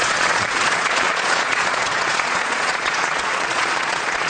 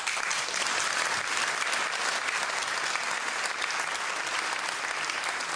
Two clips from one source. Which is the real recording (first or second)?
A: second